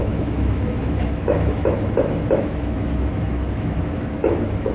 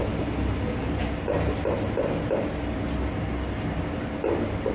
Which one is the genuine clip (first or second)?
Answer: second